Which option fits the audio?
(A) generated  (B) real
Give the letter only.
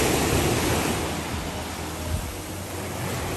B